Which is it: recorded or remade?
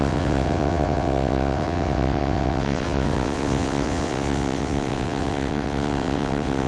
remade